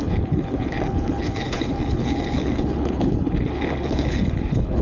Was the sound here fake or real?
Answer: fake